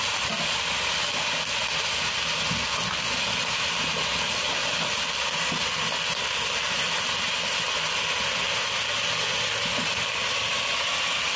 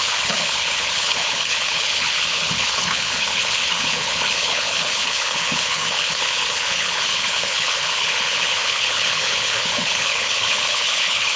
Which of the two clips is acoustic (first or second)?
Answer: first